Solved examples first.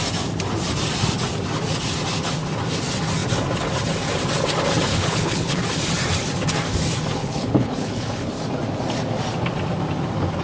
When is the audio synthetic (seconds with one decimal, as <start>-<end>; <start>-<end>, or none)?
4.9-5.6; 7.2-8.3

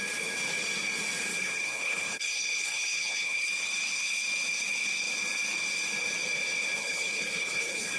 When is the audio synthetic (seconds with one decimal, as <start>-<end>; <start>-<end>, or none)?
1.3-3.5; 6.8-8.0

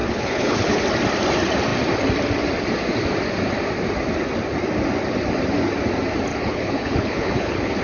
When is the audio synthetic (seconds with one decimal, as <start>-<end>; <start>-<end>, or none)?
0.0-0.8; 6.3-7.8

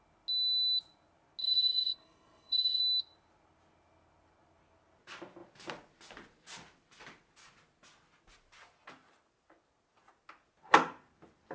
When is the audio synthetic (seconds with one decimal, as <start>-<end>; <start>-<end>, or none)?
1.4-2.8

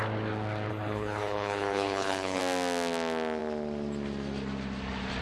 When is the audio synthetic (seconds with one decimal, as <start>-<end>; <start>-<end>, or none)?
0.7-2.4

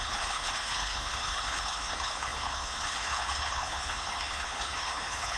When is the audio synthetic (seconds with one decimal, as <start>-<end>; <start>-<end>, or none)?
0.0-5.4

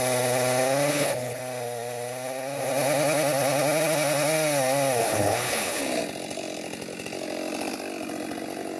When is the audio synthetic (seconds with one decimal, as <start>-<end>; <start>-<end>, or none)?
0.9-1.4; 5.0-5.8